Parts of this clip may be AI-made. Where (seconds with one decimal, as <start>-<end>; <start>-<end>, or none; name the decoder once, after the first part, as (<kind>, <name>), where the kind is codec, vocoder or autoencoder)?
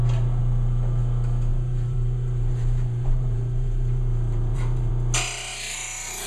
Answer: 1.5-4.9 (vocoder, BigVGAN v2)